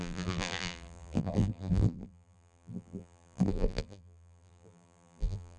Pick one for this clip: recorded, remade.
remade